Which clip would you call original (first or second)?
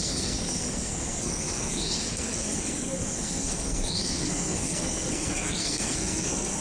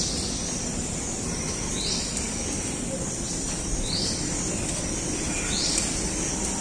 second